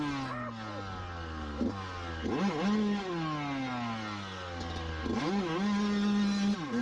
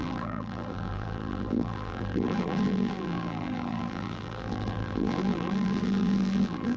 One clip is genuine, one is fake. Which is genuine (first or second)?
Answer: first